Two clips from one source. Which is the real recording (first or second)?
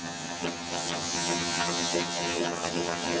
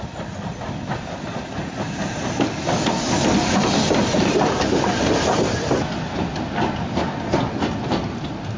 second